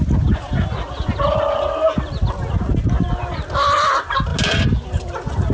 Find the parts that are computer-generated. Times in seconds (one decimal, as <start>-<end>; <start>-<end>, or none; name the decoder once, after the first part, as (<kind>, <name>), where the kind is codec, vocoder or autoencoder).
none